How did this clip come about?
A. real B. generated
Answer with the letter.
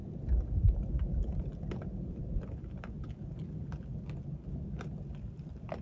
A